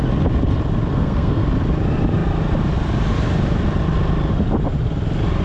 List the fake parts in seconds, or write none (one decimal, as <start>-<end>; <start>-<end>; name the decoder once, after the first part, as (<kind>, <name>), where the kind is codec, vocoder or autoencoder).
0.9-1.4 (codec, SNAC)